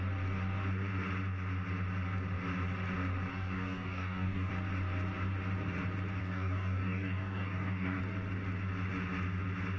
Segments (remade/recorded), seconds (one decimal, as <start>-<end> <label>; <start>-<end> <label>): 0.0-3.3 recorded; 3.3-4.5 remade; 4.5-6.2 recorded; 6.2-8.0 remade; 8.0-9.8 recorded

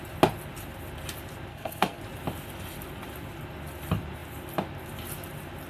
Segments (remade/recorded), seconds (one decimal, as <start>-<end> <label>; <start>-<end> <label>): 0.0-1.5 recorded; 1.5-2.0 remade; 2.0-5.7 recorded

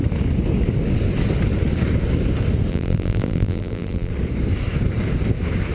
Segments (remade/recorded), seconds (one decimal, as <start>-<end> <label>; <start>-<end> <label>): 0.0-2.7 recorded; 2.7-4.1 remade; 4.1-5.7 recorded